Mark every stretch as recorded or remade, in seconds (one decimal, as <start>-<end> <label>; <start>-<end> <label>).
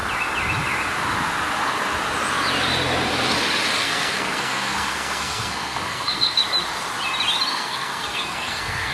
0.0-3.8 recorded; 3.8-6.4 remade; 6.4-7.5 recorded; 7.5-8.9 remade